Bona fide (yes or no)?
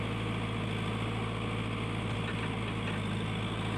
yes